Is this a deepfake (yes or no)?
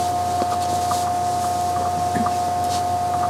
no